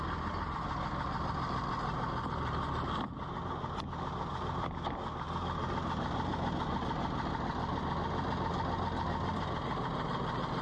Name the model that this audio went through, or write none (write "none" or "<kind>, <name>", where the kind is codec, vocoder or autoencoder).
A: none